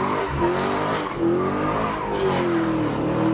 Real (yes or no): yes